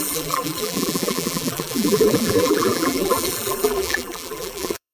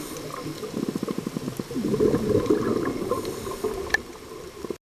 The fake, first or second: first